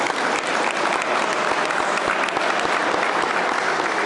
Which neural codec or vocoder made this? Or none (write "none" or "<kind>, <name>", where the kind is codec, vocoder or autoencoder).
none